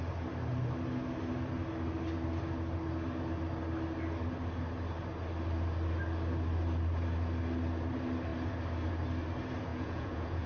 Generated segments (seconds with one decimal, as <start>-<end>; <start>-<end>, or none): 9.7-10.5